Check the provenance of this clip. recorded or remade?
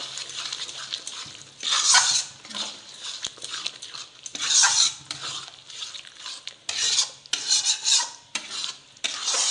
recorded